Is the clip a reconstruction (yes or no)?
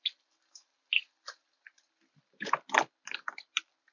no